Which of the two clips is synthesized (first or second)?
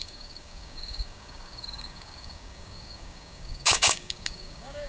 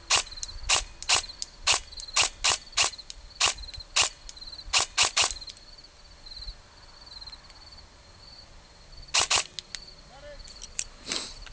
first